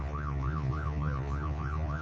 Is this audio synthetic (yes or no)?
yes